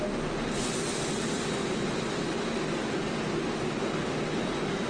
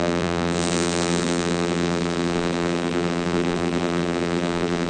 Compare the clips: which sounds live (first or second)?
first